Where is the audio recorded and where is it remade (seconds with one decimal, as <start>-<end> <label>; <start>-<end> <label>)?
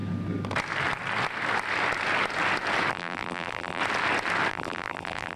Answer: 0.0-2.9 recorded; 2.9-3.8 remade; 3.8-4.5 recorded; 4.5-5.4 remade